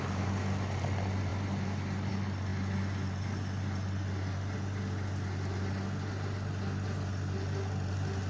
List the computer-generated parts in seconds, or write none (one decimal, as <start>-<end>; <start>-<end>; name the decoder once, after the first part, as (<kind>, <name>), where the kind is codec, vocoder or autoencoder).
none